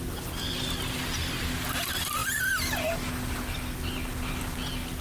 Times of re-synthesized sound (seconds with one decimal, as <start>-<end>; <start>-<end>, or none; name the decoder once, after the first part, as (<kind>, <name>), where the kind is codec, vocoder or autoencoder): none